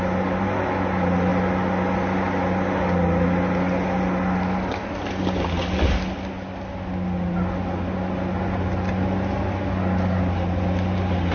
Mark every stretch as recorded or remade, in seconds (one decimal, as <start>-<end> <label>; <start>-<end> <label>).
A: 0.0-11.3 recorded